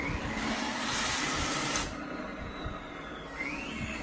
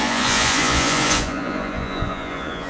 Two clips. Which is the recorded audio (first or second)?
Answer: first